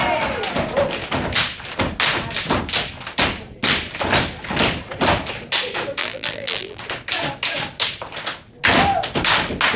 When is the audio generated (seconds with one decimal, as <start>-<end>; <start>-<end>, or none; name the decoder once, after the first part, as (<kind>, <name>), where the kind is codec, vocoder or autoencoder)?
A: 6.0-6.8 (vocoder, BigVGAN v2)